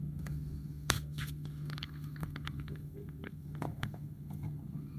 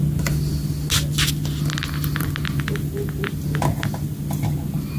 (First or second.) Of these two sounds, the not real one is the first